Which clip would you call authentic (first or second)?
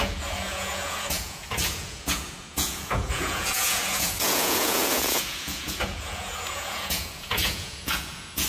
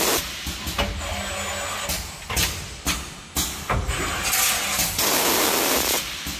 second